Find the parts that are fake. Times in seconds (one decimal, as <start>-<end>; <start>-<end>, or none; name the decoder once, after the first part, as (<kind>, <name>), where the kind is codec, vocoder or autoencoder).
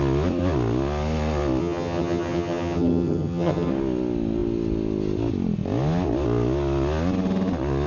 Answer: 1.6-3.7 (vocoder, HiFi-GAN)